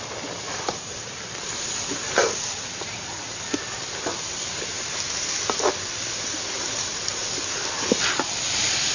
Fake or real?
fake